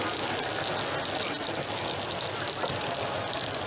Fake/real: real